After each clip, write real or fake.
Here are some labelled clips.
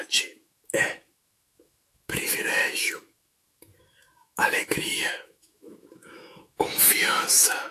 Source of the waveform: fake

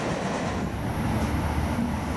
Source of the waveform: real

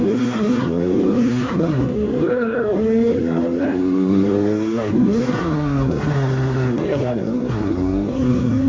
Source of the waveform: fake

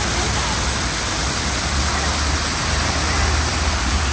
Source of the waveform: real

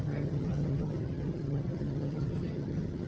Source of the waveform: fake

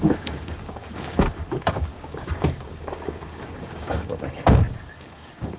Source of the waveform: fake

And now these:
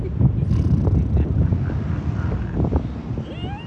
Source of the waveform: real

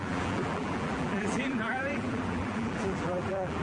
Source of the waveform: fake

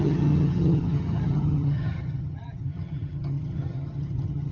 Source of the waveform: fake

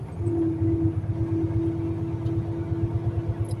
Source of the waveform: real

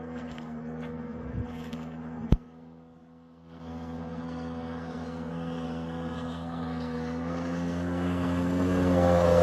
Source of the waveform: fake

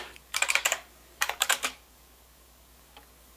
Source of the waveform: fake